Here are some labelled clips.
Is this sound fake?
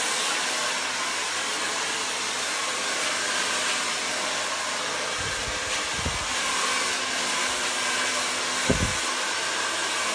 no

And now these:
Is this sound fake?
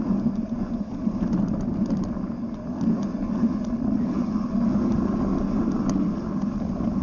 no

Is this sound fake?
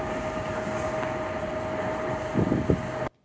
no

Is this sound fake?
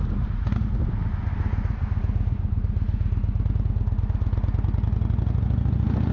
no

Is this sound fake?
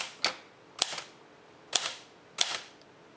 no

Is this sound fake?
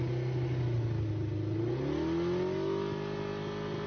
no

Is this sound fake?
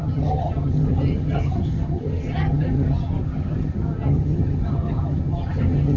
yes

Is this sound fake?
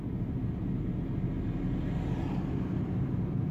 no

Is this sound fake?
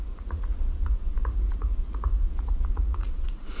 yes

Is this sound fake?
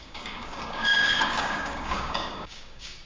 yes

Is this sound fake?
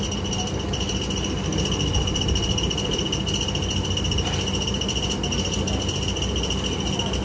no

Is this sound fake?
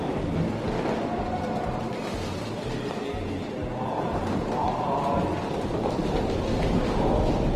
no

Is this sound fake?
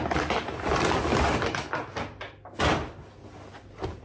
no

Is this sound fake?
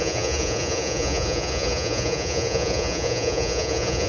yes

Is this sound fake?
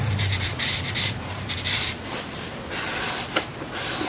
no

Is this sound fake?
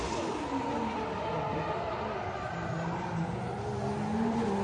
no